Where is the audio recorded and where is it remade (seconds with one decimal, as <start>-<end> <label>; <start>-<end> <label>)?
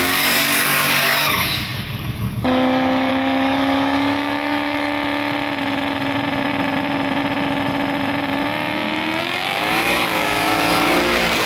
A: 0.0-4.9 remade; 4.9-9.2 recorded; 9.2-11.5 remade